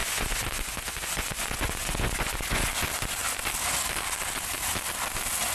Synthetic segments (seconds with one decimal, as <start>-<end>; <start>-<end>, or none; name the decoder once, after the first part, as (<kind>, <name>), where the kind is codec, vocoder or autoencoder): 0.0-2.7 (vocoder, Vocos)